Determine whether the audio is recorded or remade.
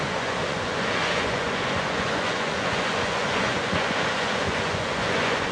remade